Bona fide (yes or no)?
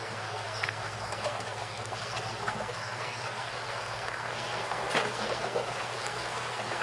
no